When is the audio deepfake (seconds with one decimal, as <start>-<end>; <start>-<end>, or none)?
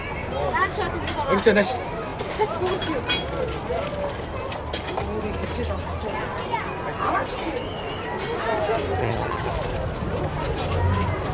9.0-9.5